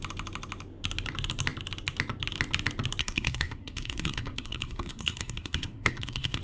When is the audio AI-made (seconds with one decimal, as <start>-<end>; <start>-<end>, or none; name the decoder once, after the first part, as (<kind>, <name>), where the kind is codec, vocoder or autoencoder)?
3.0-6.4 (codec, SNAC)